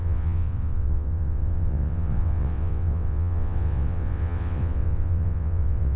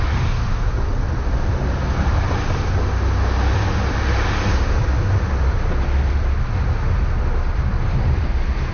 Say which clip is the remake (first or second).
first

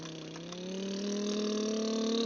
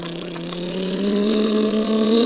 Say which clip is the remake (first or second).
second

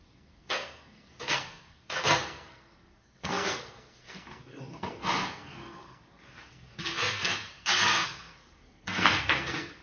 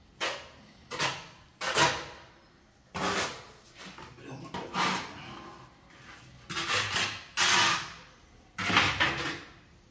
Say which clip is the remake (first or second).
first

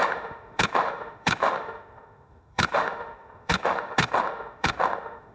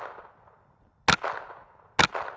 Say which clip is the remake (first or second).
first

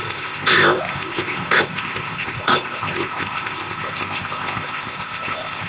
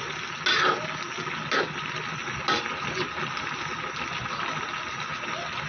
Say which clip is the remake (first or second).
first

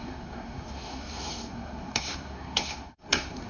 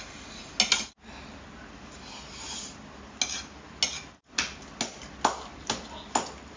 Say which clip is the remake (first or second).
first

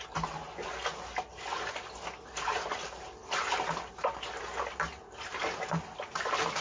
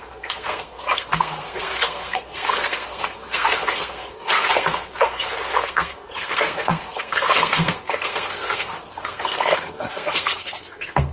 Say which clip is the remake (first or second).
second